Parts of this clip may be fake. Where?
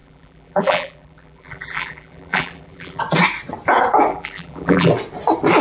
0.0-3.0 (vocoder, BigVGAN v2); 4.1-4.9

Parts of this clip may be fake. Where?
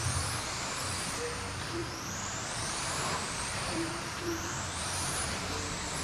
1.8-5.4 (vocoder, BigVGAN v2)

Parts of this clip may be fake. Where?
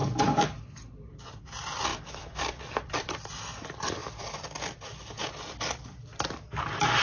0.0-0.6 (vocoder, BigVGAN v2); 1.9-3.3; 4.0-5.3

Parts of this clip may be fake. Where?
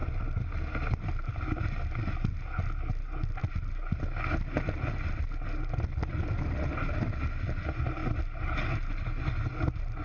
0.0-0.5 (vocoder, BigVGAN v2)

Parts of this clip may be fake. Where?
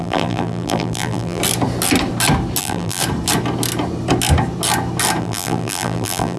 0.0-1.4 (vocoder, BigVGAN v2); 2.6-3.0; 5.2-6.4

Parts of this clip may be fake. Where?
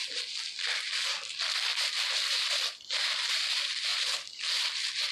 0.9-5.1 (vocoder, BigVGAN v2)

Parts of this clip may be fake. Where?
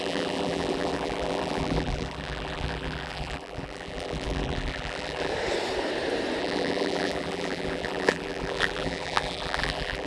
0.0-5.3 (vocoder, BigVGAN v2); 6.4-10.1